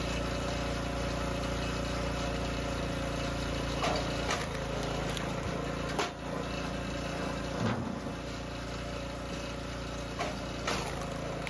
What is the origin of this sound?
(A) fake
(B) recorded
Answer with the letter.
B